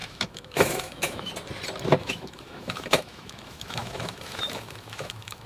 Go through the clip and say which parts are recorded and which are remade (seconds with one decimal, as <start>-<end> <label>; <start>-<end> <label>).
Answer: 0.0-1.3 remade; 1.3-2.0 recorded; 2.0-5.5 remade